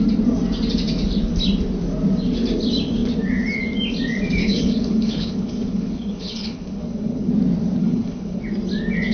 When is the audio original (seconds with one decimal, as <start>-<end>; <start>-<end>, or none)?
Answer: 0.0-4.4; 7.3-7.8; 8.4-9.1